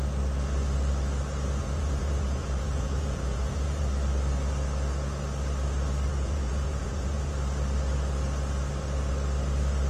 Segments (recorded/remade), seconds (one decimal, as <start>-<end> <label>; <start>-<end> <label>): 0.0-1.6 recorded; 1.6-3.9 remade; 3.9-6.1 recorded; 6.1-7.3 remade; 7.3-9.9 recorded